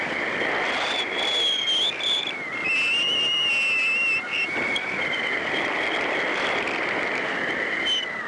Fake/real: real